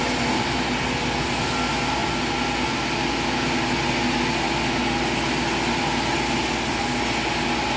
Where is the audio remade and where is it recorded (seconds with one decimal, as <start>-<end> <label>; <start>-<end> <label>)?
0.0-7.8 recorded